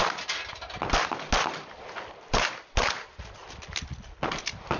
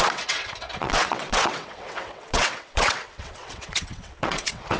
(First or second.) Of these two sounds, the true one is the first